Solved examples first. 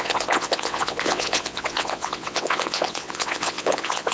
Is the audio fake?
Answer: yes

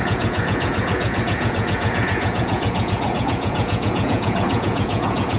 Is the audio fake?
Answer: yes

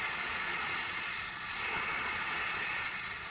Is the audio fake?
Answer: yes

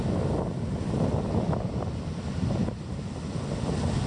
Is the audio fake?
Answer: no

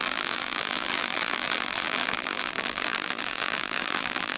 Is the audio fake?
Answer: yes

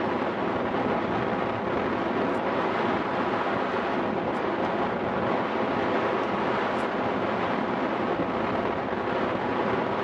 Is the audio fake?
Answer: no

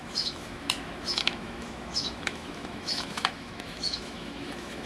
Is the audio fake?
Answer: yes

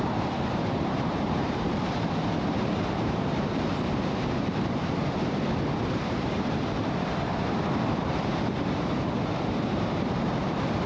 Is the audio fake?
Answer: yes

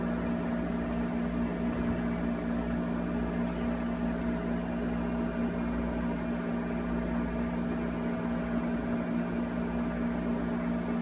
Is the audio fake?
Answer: no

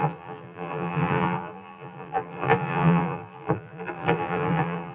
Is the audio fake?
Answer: yes